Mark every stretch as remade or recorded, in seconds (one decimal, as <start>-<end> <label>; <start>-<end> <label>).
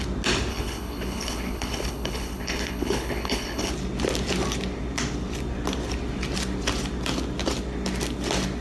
0.0-0.5 recorded; 0.5-3.7 remade; 3.7-8.6 recorded